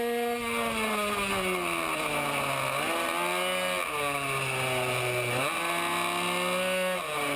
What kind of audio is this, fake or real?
real